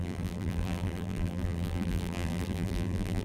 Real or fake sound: fake